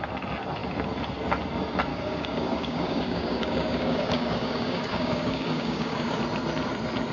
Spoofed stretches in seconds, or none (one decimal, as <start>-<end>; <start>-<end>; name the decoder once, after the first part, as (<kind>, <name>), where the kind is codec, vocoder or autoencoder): 1.9-6.2 (codec, DAC)